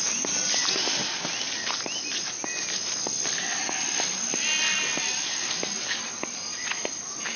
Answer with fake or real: real